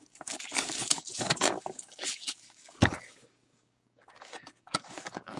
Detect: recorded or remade remade